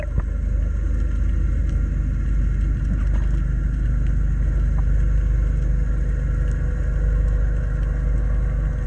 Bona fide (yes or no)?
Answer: yes